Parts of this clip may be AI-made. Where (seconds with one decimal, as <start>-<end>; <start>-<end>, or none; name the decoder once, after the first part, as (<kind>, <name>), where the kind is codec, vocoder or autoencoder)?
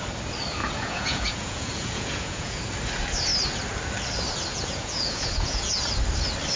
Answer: 0.6-2.6 (vocoder, Vocos); 4.5-5.8